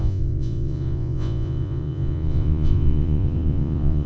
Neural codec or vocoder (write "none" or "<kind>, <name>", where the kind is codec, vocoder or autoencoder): vocoder, Vocos